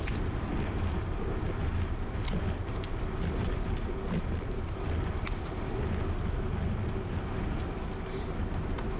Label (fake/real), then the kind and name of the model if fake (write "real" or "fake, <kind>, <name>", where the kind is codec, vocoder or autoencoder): real